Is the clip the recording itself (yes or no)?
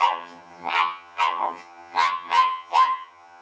no